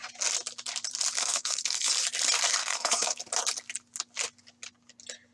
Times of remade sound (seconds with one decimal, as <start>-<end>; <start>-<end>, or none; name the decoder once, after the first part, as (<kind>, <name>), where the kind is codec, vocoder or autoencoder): 1.2-1.9 (codec, SNAC); 2.6-3.2